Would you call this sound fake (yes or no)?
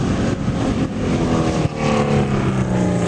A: no